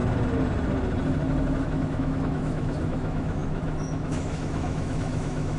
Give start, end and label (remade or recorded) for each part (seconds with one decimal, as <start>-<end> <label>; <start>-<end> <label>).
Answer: 0.0-1.6 recorded; 1.6-5.6 remade